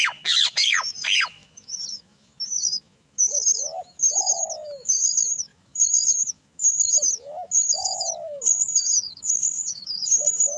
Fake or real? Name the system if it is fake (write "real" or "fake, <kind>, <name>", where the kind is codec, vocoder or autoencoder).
fake, autoencoder, DAC-VAE